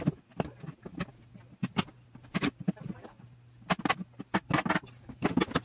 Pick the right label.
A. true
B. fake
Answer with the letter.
A